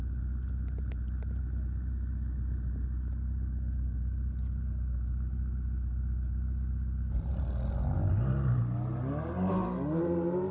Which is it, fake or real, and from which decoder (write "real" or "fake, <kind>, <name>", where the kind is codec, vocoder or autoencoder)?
real